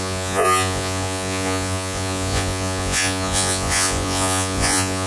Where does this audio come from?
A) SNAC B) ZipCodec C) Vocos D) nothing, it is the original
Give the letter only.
C